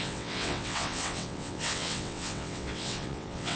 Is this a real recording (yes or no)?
no